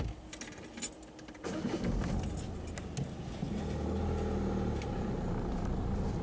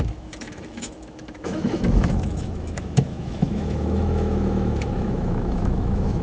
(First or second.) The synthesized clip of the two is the second